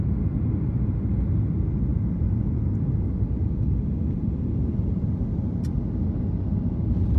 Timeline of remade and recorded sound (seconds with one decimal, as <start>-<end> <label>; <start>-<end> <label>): 0.0-1.9 recorded; 1.9-5.5 remade; 5.5-7.2 recorded